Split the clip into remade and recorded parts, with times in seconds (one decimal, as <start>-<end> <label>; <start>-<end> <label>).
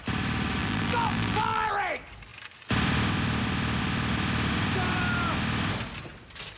0.0-0.6 recorded; 0.6-1.7 remade; 1.7-6.6 recorded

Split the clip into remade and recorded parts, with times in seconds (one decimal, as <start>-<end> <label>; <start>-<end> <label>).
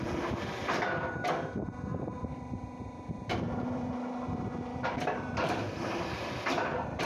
0.0-1.9 recorded; 1.9-6.2 remade; 6.2-7.1 recorded